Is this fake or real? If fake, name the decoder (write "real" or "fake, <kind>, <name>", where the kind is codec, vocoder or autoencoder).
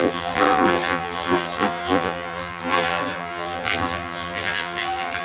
fake, vocoder, BigVGAN v2